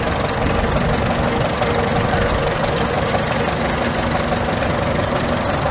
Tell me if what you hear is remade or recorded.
recorded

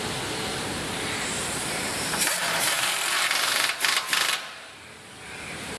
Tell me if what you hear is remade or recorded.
remade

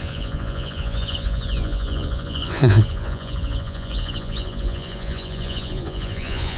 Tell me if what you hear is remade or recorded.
remade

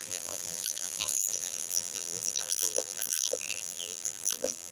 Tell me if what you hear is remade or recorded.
remade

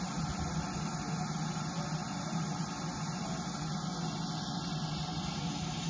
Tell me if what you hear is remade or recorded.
recorded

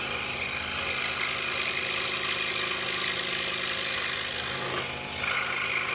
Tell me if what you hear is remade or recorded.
recorded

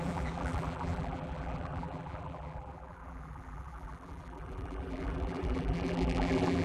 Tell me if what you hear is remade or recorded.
remade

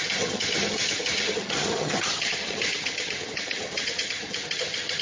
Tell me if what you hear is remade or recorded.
remade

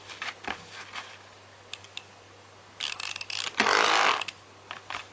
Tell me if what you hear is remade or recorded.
recorded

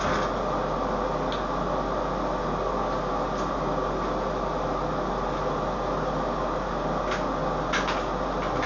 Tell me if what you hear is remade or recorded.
recorded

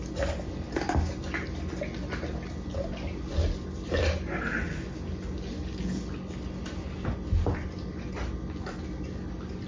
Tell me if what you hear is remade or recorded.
recorded